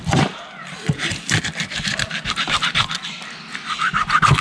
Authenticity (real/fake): real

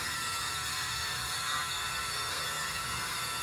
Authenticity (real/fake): fake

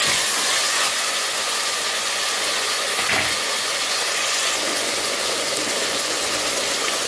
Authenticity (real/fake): fake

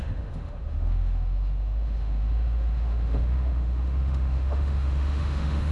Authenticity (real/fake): fake